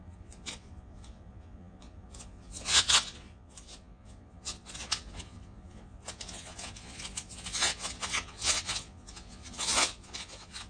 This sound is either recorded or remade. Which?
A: remade